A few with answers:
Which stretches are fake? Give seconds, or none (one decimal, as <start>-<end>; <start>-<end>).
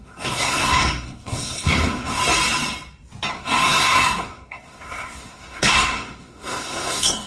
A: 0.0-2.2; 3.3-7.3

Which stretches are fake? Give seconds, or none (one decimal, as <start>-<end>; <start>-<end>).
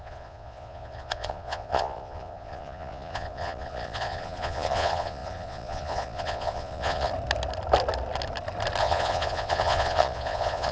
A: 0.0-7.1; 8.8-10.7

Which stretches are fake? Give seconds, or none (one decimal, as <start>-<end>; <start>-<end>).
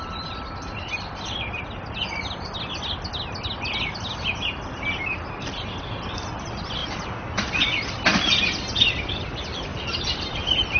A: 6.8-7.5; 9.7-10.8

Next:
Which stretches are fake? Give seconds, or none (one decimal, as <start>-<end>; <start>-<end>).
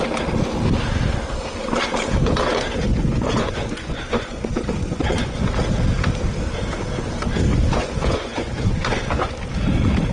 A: 2.9-5.6; 7.5-9.3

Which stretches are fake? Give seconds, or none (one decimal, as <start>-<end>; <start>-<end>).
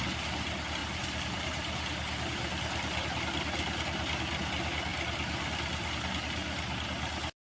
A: 0.8-3.2; 4.9-5.9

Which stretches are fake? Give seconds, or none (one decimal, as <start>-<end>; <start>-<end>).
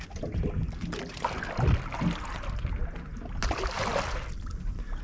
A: none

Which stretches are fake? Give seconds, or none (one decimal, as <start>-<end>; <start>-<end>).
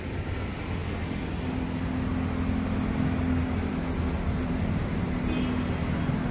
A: none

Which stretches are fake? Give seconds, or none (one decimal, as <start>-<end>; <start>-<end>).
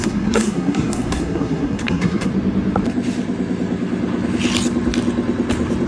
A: 0.0-2.3